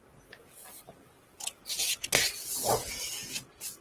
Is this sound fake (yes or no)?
no